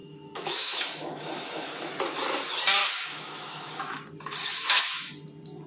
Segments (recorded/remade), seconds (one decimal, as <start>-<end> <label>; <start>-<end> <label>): 0.0-1.9 remade; 1.9-2.8 recorded; 2.8-4.0 remade; 4.0-4.4 recorded; 4.4-5.1 remade; 5.1-5.7 recorded